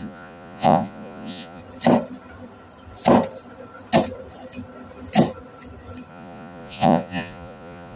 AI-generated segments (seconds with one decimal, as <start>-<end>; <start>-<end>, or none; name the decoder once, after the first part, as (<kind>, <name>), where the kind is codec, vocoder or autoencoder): 0.0-1.6 (vocoder, Vocos); 6.1-8.0